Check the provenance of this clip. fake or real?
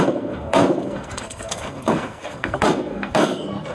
fake